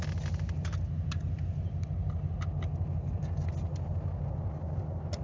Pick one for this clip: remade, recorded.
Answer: recorded